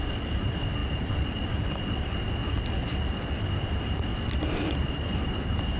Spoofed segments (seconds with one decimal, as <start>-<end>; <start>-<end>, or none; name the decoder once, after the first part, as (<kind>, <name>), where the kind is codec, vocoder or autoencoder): 0.8-3.4 (vocoder, BigVGAN v2)